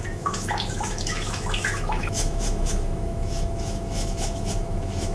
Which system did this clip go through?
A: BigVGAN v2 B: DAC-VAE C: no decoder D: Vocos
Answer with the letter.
B